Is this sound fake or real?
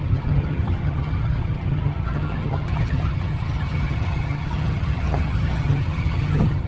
fake